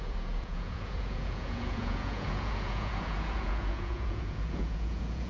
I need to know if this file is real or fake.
fake